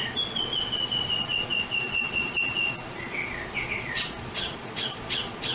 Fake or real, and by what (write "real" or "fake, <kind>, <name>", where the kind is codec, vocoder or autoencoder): fake, vocoder, Vocos